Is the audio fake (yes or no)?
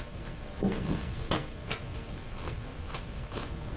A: yes